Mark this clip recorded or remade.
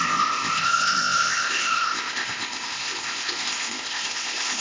remade